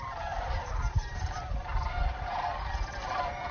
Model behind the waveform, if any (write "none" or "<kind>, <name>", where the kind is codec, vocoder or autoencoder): none